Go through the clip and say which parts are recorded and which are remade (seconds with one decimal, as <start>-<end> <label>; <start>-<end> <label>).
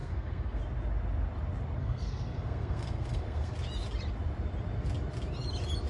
0.0-0.6 remade; 0.6-1.8 recorded; 1.8-3.5 remade; 3.5-5.9 recorded